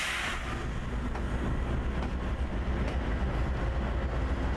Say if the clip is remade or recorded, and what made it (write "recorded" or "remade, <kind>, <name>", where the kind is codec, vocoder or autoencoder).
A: recorded